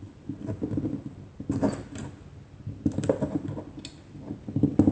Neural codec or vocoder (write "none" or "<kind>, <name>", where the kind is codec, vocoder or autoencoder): none